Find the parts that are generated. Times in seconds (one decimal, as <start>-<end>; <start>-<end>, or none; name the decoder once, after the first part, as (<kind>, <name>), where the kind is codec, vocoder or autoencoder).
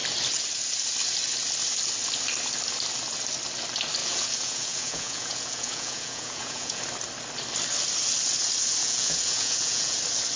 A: 4.0-6.8 (vocoder, Vocos); 8.8-10.0